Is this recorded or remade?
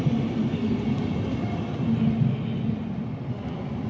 recorded